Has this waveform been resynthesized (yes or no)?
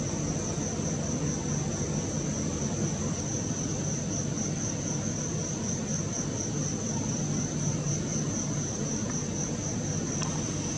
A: no